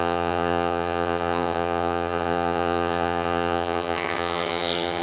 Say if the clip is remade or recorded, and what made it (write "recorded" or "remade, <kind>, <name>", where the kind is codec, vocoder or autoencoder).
remade, vocoder, HiFi-GAN